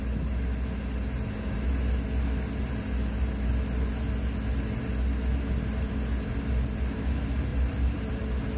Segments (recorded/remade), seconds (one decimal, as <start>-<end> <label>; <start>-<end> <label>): 0.0-7.5 recorded; 7.5-8.1 remade; 8.1-8.6 recorded